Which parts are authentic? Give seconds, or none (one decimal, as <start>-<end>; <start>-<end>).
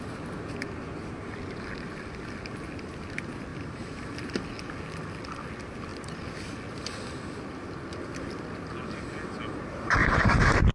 0.0-3.5; 4.4-10.0